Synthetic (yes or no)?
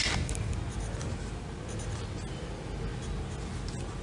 no